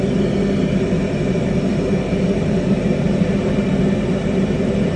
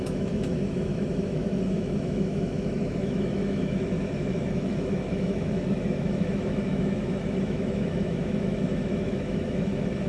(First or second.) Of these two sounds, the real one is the first